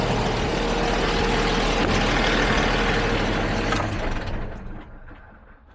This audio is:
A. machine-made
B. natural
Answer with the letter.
B